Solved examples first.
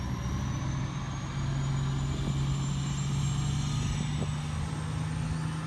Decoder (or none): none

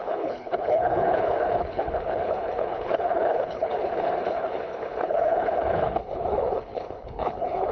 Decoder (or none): codec, HILCodec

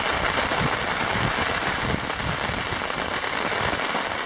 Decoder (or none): none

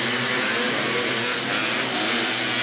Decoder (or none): none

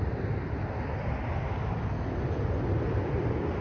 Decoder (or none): none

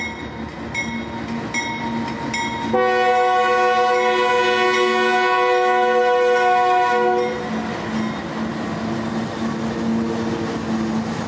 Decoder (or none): none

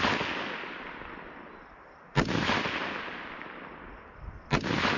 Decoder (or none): none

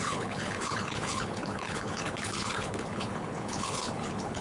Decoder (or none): codec, HILCodec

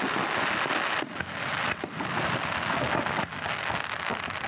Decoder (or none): none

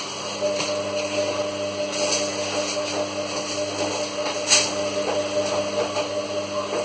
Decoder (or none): none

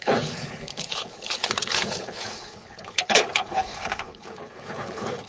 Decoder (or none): codec, HILCodec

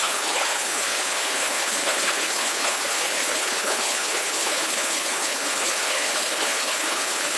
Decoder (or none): codec, HILCodec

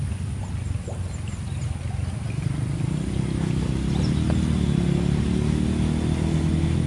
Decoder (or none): none